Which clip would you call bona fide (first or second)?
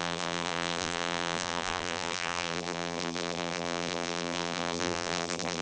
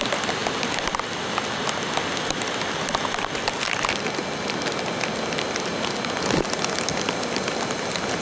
second